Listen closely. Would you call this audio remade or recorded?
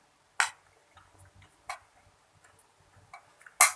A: recorded